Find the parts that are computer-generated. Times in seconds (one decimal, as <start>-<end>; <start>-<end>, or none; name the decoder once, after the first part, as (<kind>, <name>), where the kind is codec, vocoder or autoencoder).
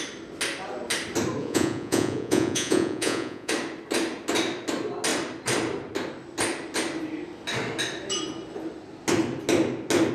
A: 1.4-3.5 (vocoder, Vocos)